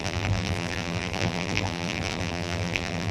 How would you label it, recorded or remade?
remade